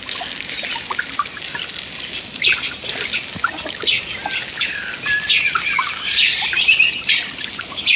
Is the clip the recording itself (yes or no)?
yes